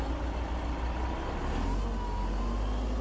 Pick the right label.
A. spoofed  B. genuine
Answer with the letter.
B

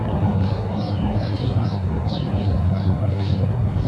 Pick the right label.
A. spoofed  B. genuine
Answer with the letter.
A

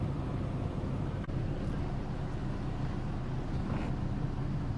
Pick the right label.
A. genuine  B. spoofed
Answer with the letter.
A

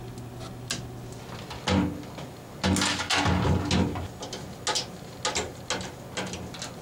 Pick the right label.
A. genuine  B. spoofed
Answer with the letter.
A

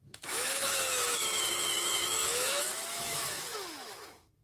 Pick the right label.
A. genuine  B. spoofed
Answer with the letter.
B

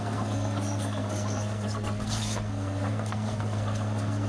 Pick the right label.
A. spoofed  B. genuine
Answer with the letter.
A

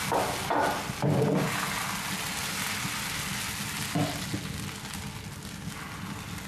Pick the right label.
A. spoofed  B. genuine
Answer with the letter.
B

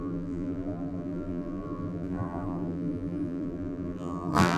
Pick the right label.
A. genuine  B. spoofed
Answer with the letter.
B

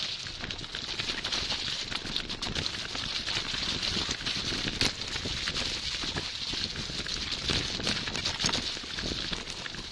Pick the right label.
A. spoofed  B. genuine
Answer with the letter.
B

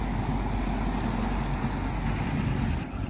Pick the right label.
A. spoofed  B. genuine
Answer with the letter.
B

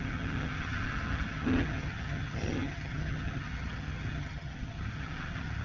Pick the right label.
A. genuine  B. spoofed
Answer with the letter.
B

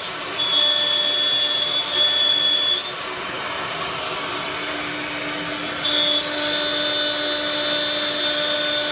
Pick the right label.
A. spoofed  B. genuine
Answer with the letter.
B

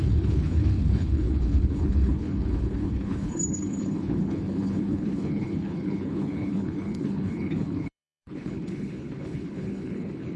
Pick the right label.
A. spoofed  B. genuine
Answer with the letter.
A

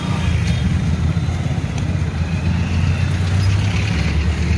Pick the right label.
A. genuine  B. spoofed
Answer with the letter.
A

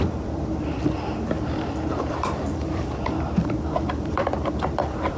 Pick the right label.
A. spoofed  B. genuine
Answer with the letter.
A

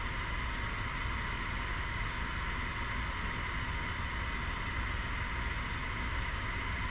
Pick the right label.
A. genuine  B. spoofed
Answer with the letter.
A